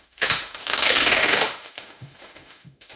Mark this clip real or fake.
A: fake